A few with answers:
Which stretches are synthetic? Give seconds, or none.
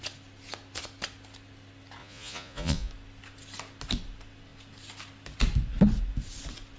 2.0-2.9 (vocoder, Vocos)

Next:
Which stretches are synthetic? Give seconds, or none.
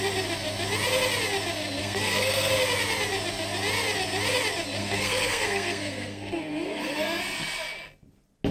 1.8-2.5 (codec, SNAC); 4.8-7.2